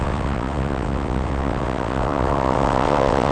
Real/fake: fake